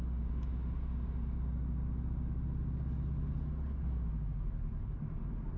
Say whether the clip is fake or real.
real